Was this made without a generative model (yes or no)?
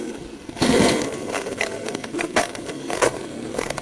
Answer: no